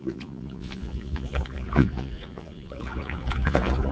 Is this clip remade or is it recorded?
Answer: remade